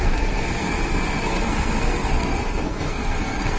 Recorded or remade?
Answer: remade